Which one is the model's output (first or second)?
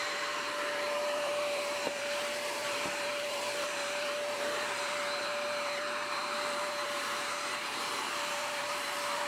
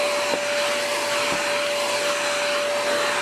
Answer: first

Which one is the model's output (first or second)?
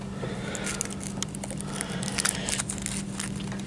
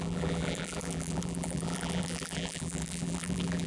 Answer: second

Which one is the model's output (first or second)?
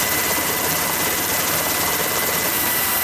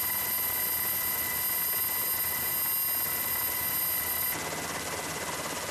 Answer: first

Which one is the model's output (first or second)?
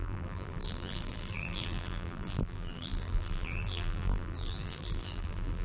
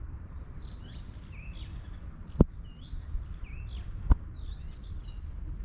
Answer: first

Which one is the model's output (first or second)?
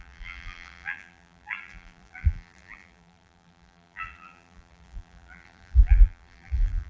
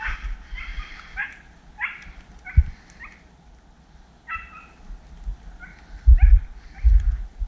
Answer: first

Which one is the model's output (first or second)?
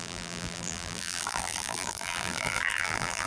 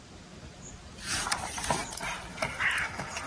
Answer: first